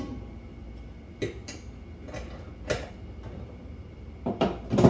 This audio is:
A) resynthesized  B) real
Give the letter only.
B